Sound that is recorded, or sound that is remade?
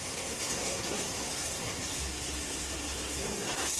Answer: remade